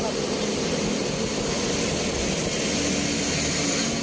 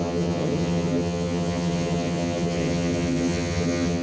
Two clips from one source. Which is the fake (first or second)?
second